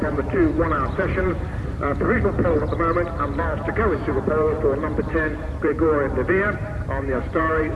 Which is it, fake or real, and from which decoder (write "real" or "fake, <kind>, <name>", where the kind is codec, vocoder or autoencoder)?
fake, vocoder, BigVGAN v2